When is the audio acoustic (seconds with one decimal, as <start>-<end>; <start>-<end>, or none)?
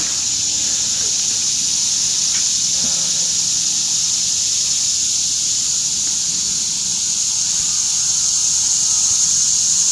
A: 0.0-9.9